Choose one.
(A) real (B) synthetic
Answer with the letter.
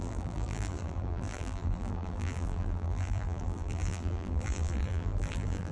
B